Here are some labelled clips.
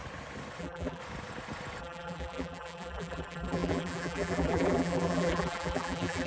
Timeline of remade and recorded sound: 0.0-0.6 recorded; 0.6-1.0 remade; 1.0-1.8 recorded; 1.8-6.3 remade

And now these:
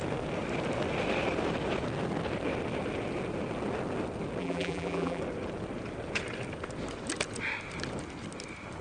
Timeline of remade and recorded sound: 0.0-4.4 recorded; 4.4-5.2 remade; 5.2-8.8 recorded

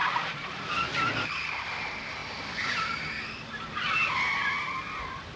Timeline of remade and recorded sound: 0.0-0.5 remade; 0.5-2.2 recorded; 2.2-3.9 remade; 3.9-5.4 recorded